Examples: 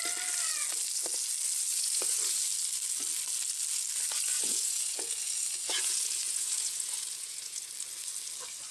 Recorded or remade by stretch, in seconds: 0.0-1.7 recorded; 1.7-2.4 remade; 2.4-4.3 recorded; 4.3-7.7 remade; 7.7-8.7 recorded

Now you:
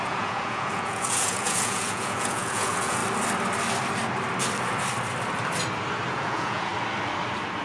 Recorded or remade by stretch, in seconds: 0.0-3.0 remade; 3.0-6.1 recorded; 6.1-6.7 remade; 6.7-7.6 recorded

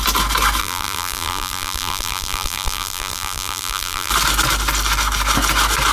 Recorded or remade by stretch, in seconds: 0.0-0.6 recorded; 0.6-4.1 remade; 4.1-5.9 recorded

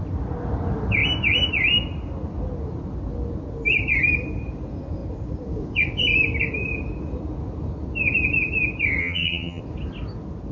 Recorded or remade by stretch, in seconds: 0.0-9.0 recorded; 9.0-9.6 remade; 9.6-10.5 recorded

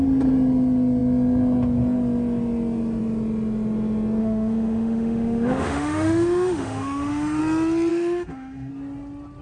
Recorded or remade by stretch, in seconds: 0.0-4.2 recorded; 4.2-7.4 remade; 7.4-7.9 recorded; 7.9-8.7 remade; 8.7-9.4 recorded

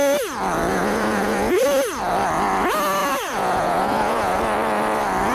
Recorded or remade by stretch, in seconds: 0.0-0.7 recorded; 0.7-1.6 remade; 1.6-3.0 recorded; 3.0-4.4 remade; 4.4-5.3 recorded

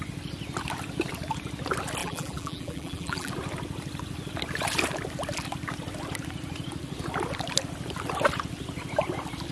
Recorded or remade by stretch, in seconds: 0.0-2.0 recorded; 2.0-3.3 remade; 3.3-9.5 recorded